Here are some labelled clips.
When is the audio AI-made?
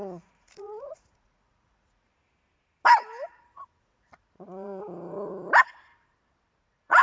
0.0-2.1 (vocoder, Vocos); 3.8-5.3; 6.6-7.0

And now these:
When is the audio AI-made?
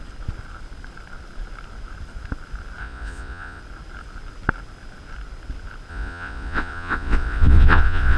2.8-3.6 (vocoder, Vocos); 5.9-8.2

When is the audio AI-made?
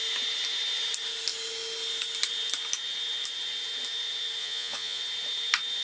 4.4-5.0 (vocoder, Vocos)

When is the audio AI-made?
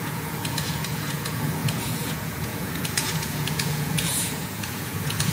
0.0-5.3 (vocoder, Vocos)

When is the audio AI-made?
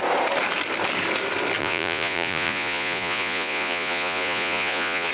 1.6-5.1 (vocoder, Vocos)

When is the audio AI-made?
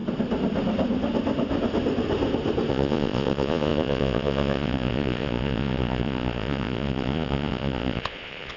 2.7-8.6 (vocoder, Vocos)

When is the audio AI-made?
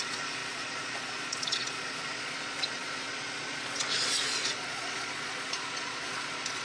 0.0-6.6 (vocoder, Vocos)